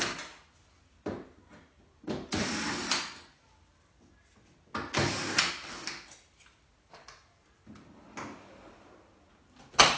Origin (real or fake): real